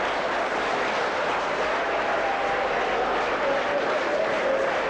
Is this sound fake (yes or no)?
no